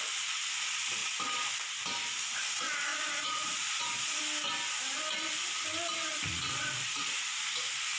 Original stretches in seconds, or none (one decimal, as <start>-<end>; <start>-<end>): 0.0-2.9; 4.2-6.1; 7.1-8.0